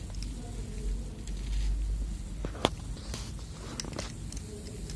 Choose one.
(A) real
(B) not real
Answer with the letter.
A